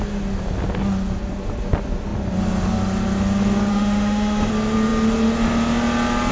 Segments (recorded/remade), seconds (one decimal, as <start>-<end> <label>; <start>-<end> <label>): 0.0-3.7 recorded; 3.7-4.5 remade; 4.5-6.3 recorded